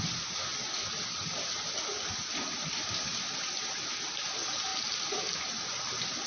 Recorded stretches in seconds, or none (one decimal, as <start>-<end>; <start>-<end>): 0.0-6.3